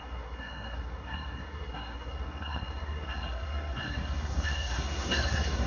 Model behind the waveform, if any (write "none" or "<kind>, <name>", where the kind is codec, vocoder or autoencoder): codec, SNAC